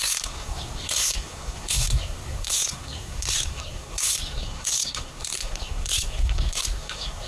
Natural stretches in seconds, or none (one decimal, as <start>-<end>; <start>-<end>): none